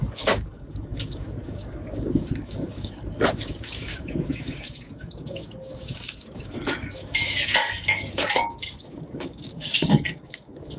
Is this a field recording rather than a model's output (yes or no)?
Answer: no